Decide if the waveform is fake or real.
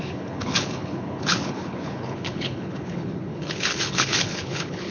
fake